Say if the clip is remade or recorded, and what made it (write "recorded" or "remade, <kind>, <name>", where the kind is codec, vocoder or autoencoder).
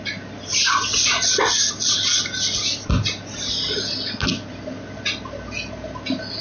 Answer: recorded